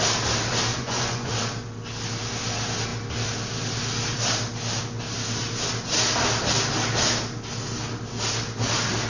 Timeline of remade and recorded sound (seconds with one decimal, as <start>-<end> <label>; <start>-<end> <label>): 0.0-0.7 recorded; 0.7-1.3 remade; 1.3-9.1 recorded

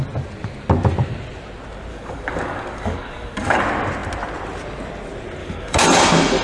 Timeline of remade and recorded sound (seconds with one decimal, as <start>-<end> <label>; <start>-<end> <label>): 0.0-1.9 recorded; 1.9-3.6 remade; 3.6-5.4 recorded; 5.4-6.0 remade; 6.0-6.4 recorded

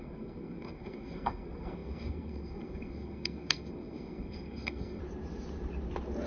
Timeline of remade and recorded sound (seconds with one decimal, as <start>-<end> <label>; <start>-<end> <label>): 0.0-5.0 remade; 5.0-6.3 recorded